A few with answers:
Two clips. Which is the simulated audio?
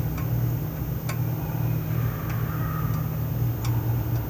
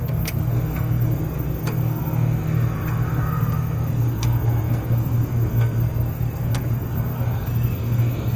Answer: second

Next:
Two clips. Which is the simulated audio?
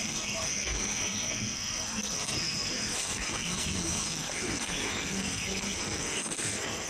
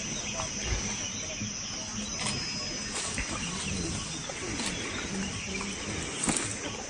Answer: first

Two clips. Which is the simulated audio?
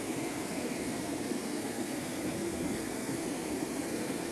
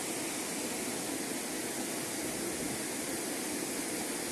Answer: first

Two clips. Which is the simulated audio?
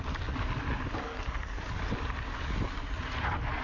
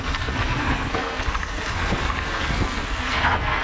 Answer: second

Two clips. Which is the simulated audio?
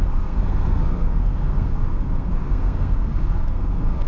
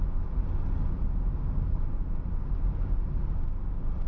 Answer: first